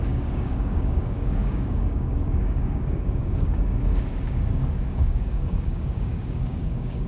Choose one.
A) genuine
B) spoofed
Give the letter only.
B